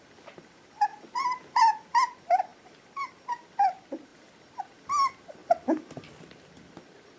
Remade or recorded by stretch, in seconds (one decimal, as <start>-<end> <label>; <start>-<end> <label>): 0.0-7.2 recorded